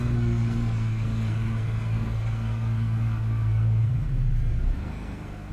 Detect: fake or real fake